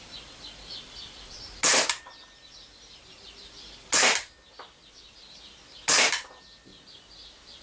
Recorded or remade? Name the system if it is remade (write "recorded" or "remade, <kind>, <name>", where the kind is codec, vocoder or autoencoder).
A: recorded